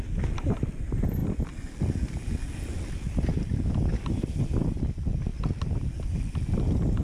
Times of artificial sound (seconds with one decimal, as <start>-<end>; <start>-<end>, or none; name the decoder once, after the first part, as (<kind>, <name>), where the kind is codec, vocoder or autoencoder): none